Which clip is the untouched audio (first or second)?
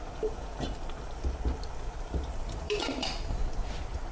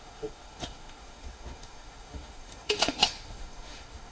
first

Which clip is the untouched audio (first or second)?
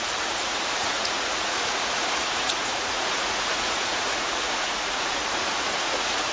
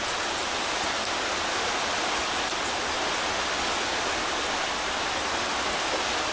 second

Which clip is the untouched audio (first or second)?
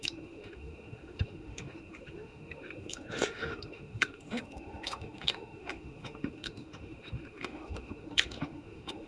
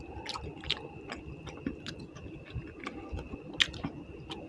second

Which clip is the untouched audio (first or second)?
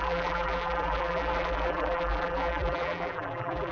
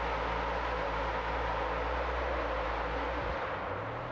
second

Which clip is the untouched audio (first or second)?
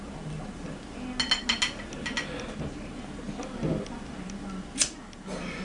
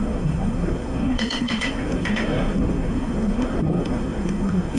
first